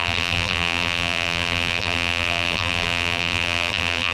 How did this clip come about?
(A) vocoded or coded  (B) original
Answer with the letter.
A